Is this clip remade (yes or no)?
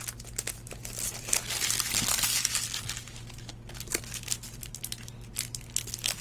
no